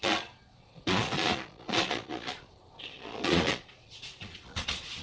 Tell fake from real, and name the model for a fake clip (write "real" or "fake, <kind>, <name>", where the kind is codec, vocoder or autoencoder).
fake, vocoder, Vocos